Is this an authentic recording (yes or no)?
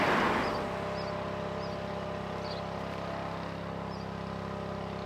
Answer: yes